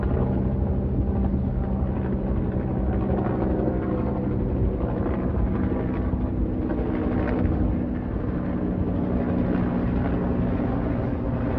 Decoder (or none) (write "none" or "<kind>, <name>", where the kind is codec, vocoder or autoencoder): none